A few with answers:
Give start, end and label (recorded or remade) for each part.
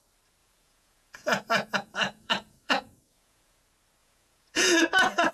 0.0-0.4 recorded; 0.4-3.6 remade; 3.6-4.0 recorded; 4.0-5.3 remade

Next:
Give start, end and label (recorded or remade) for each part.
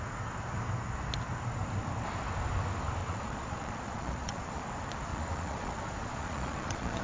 0.0-3.0 recorded; 3.0-4.6 remade; 4.6-5.1 recorded; 5.1-7.0 remade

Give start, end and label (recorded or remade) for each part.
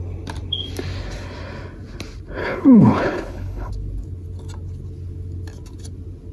0.0-2.4 recorded; 2.4-3.7 remade; 3.7-6.3 recorded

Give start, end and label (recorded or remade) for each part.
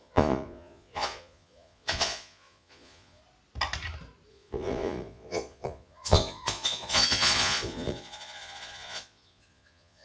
0.0-3.2 remade; 3.2-4.3 recorded; 4.3-10.0 remade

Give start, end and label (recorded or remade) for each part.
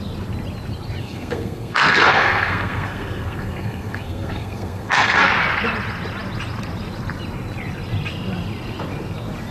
0.0-1.0 recorded; 1.0-5.3 remade; 5.3-9.5 recorded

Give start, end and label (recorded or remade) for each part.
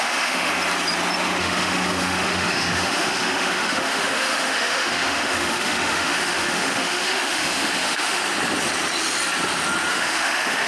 0.0-0.5 remade; 0.5-1.4 recorded; 1.4-8.2 remade; 8.2-9.9 recorded; 9.9-10.7 remade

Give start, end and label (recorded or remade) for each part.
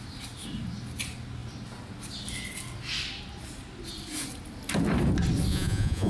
0.0-5.5 recorded; 5.5-6.1 remade